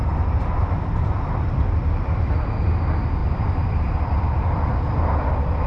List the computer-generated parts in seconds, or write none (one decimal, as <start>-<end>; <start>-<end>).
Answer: 0.0-2.5; 3.2-4.7